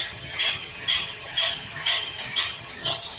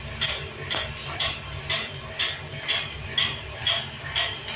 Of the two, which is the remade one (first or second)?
first